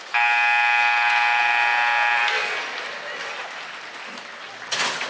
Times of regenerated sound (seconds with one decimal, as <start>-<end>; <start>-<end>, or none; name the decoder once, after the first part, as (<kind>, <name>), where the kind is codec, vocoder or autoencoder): none